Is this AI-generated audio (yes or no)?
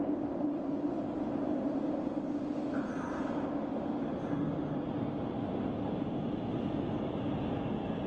no